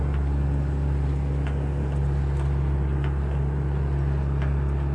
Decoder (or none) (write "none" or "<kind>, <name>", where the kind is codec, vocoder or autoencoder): none